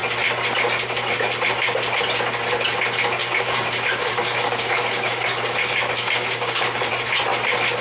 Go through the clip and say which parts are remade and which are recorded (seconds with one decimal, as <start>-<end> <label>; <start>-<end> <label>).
0.0-3.2 recorded; 3.2-6.9 remade; 6.9-7.8 recorded